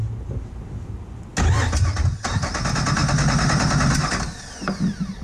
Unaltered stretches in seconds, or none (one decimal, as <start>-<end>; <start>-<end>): 0.0-5.2